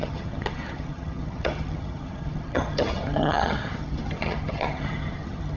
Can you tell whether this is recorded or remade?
remade